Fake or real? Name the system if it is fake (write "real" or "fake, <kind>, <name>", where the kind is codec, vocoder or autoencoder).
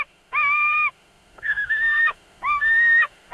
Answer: fake, autoencoder, DAC-VAE